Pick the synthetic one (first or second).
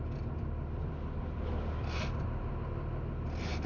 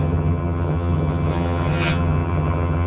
second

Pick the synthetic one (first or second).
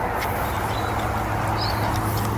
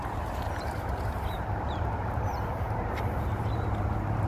second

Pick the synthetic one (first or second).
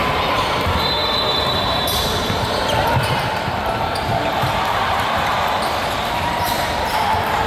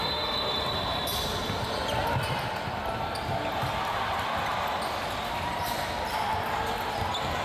first